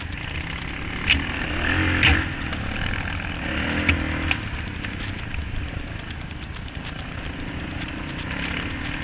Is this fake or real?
real